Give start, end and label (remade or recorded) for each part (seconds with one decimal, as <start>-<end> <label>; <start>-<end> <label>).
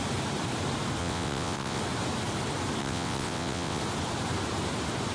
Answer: 0.0-1.0 recorded; 1.0-1.8 remade; 1.8-2.8 recorded; 2.8-3.8 remade; 3.8-5.1 recorded